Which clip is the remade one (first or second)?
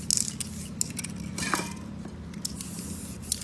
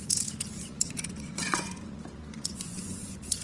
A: second